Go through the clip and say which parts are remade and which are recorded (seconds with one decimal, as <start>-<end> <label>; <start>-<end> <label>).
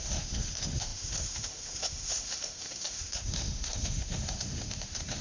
0.0-5.2 remade